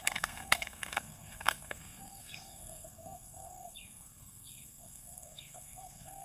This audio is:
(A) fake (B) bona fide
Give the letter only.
A